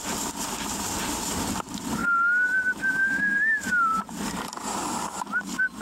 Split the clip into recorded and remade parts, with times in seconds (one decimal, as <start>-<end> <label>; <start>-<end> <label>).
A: 0.0-5.8 recorded